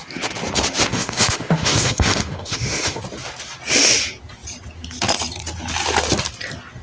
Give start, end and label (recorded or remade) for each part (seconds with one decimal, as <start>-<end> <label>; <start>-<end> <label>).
0.0-0.9 recorded; 0.9-3.0 remade; 3.0-6.8 recorded